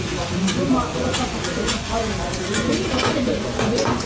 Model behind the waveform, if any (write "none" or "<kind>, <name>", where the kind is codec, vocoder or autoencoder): vocoder, Vocos